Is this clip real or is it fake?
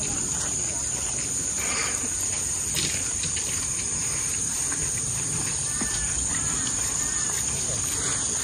real